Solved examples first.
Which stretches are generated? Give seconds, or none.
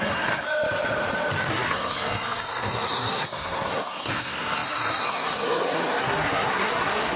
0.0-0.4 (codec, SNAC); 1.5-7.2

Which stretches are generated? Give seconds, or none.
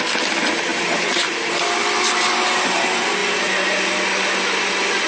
0.7-1.6 (vocoder, BigVGAN v2)